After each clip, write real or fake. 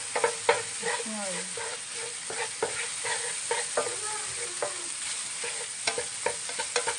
real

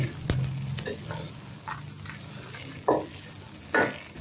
real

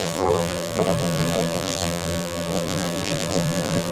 fake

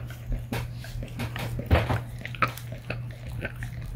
real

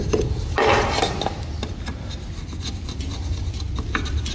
real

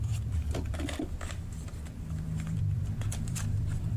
fake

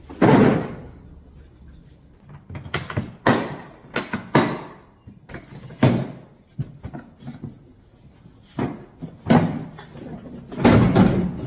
real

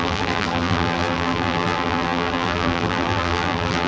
fake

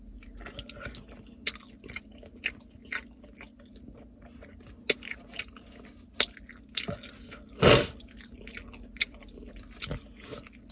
real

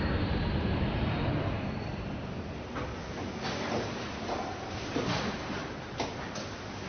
real